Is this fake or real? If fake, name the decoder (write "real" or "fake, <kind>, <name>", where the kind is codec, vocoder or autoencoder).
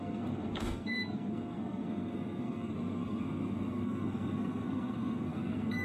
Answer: fake, codec, SNAC